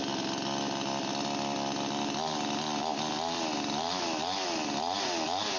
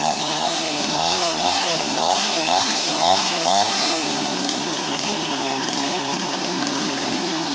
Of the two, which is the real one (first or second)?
first